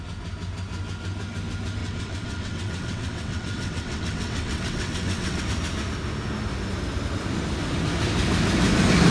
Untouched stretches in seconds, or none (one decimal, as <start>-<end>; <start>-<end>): 0.0-1.8; 5.4-9.1